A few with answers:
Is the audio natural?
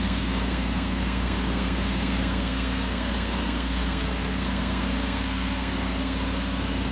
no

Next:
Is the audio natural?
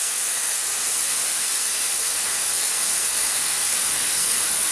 no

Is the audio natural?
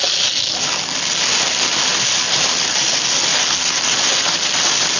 yes